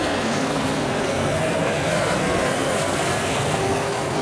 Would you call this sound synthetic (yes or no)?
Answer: yes